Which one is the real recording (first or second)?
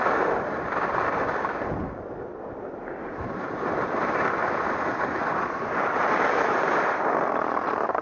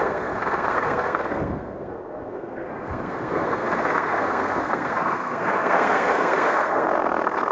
first